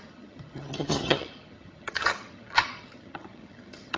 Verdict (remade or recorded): remade